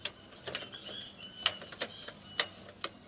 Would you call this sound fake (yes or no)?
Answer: no